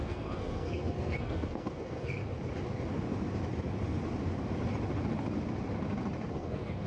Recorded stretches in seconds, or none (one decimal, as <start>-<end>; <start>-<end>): 2.2-6.3